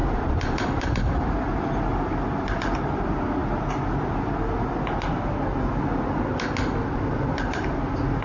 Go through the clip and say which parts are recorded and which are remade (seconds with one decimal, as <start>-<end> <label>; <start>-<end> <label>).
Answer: 0.0-1.3 remade; 1.3-8.2 recorded